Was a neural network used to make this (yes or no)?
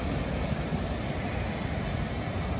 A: no